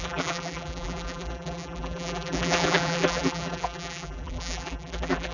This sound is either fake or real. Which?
fake